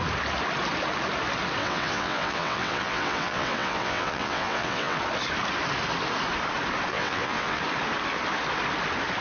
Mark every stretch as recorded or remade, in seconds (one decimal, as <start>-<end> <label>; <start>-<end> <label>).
0.0-1.6 recorded; 1.6-5.0 remade; 5.0-6.9 recorded; 6.9-7.6 remade; 7.6-9.2 recorded